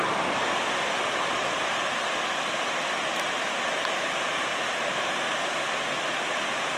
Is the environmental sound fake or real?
real